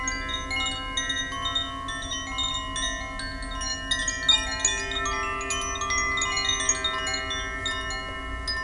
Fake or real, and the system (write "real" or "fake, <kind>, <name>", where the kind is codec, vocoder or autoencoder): real